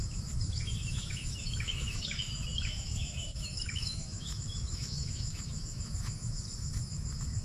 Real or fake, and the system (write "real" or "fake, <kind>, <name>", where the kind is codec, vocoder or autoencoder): fake, autoencoder, DAC-VAE